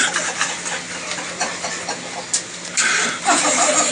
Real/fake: real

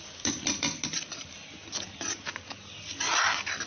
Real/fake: real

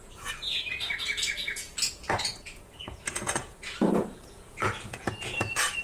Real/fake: fake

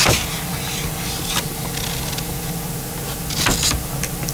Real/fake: real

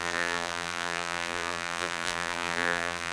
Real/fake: fake